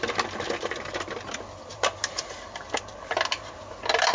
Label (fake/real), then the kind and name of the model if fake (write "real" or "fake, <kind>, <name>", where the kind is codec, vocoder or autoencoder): fake, vocoder, BigVGAN v2